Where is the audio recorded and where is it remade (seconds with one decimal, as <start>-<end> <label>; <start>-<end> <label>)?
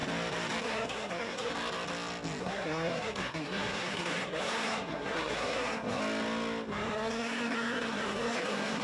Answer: 0.0-0.6 recorded; 0.6-1.5 remade; 1.5-2.4 recorded; 2.4-6.0 remade; 6.0-6.7 recorded; 6.7-8.8 remade